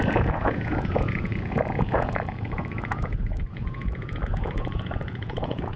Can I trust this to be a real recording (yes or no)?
no